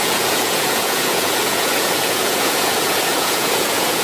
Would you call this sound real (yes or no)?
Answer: no